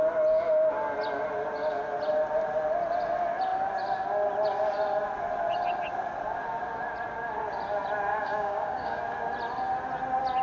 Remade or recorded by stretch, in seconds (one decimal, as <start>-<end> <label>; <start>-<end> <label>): 0.0-8.1 recorded; 8.1-9.0 remade; 9.0-10.4 recorded